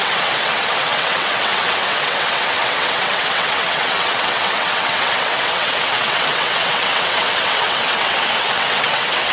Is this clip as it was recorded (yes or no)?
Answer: no